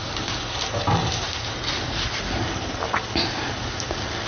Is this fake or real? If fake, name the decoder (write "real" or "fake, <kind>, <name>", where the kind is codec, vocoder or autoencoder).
real